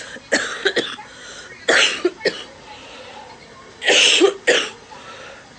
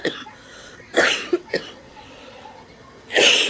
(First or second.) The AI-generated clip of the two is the second